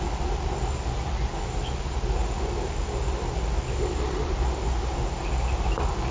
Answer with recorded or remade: recorded